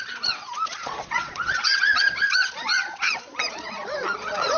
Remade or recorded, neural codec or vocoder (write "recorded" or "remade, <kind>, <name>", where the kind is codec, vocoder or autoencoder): remade, vocoder, Vocos